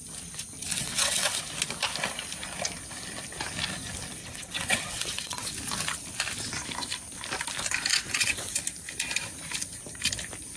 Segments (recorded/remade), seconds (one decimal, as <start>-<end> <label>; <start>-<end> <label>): 0.0-0.7 recorded; 0.7-1.4 remade; 1.4-4.2 recorded; 4.2-5.5 remade; 5.5-7.9 recorded; 7.9-8.6 remade; 8.6-10.6 recorded